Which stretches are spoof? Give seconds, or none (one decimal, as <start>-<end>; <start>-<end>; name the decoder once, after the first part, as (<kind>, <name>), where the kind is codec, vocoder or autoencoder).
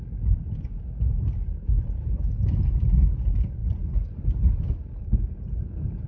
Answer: none